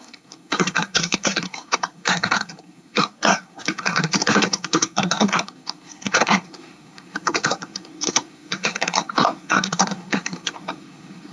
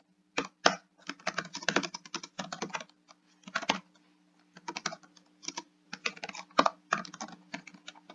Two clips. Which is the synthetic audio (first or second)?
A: first